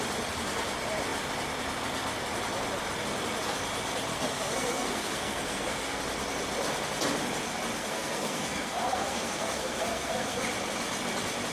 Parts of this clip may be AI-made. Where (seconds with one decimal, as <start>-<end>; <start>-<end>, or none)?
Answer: 4.1-6.0; 7.8-10.4